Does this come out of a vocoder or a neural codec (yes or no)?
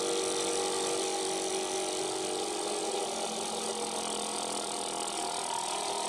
no